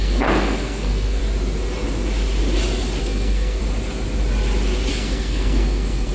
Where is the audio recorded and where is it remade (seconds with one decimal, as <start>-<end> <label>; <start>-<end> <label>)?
0.0-1.2 remade; 1.2-3.0 recorded; 3.0-3.6 remade; 3.6-4.9 recorded; 4.9-6.1 remade